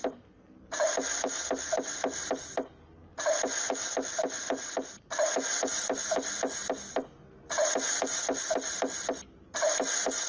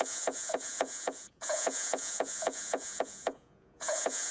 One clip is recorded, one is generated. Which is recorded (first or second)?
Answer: first